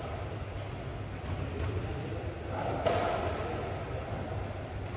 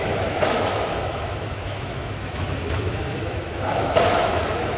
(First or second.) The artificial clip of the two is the second